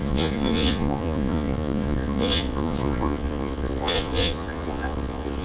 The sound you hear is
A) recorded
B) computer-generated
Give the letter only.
B